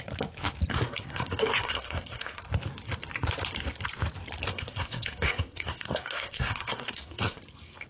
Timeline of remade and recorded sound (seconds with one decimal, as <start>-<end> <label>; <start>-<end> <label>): 0.0-0.7 recorded; 0.7-2.4 remade; 2.4-4.5 recorded; 4.5-7.4 remade; 7.4-7.9 recorded